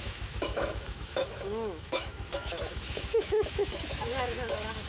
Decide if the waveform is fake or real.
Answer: fake